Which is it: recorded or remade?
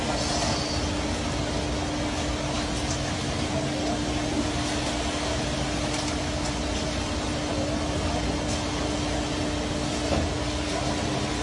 recorded